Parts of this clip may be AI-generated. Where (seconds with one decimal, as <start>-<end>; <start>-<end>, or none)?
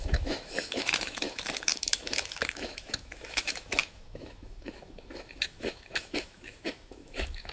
0.0-7.5